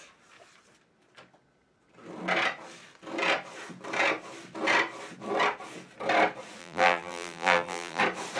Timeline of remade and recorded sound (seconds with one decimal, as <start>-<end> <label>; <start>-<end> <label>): 0.0-6.6 recorded; 6.6-8.0 remade; 8.0-8.4 recorded